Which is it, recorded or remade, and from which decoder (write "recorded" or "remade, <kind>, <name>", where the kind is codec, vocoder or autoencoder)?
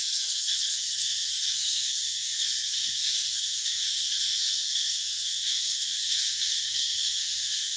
remade, codec, SNAC